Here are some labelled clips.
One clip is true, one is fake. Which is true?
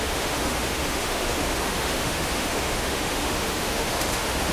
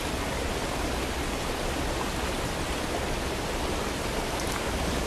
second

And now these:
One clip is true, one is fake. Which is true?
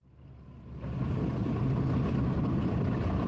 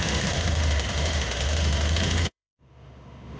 first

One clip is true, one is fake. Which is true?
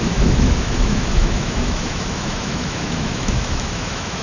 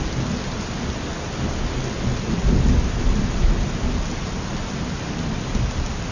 second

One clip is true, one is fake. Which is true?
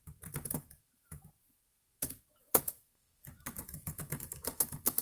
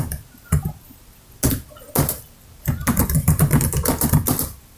second